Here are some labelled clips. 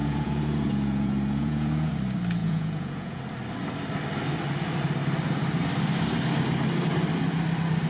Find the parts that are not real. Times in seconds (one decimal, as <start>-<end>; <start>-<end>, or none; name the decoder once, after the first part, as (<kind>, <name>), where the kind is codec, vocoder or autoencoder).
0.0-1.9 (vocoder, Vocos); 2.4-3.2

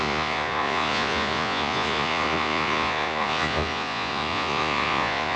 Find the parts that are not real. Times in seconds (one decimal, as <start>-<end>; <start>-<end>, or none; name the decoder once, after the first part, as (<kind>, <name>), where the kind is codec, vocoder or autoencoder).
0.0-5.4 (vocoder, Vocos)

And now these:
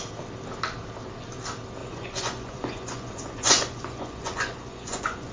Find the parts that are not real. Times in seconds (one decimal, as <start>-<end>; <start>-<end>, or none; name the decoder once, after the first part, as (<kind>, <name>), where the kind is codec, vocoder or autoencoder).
1.8-5.3 (vocoder, Vocos)

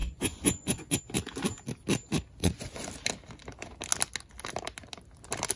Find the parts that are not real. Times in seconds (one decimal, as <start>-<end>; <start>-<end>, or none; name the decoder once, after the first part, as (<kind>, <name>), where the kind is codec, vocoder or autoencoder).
0.0-1.0 (vocoder, Vocos); 2.4-2.9

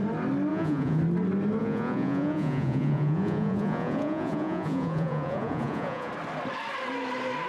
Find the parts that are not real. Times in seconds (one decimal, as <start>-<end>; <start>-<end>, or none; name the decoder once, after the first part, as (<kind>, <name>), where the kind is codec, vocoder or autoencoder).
0.5-1.0 (vocoder, Vocos); 1.6-6.1

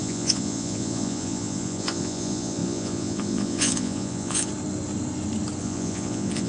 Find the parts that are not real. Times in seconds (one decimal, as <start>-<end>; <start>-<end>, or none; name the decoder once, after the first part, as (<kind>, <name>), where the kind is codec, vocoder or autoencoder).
0.0-4.5 (vocoder, Vocos); 5.6-6.5